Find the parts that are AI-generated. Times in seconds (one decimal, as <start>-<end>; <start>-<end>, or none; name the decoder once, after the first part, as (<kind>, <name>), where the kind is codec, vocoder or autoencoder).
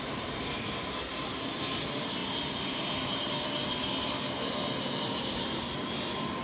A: 0.0-6.4 (vocoder, BigVGAN v2)